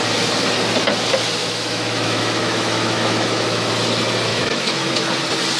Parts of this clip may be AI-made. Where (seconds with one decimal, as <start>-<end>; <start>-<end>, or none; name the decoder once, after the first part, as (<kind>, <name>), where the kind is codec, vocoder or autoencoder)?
1.4-3.7 (autoencoder, DAC-VAE); 4.3-5.1